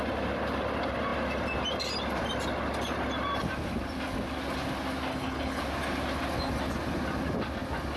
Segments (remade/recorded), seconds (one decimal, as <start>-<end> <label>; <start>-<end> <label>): 0.0-5.1 recorded; 5.1-5.6 remade; 5.6-8.0 recorded